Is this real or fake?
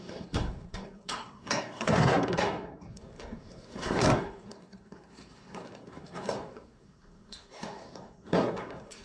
fake